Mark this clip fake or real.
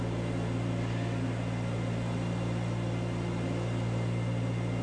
real